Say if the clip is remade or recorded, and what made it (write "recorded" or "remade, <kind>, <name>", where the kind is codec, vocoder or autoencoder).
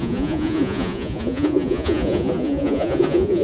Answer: remade, vocoder, Vocos